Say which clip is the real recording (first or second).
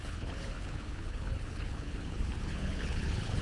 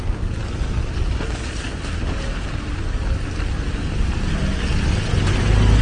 second